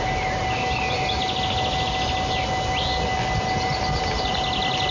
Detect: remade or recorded recorded